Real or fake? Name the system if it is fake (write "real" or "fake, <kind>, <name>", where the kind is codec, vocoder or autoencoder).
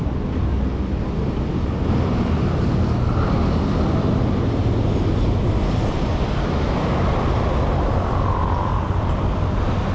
real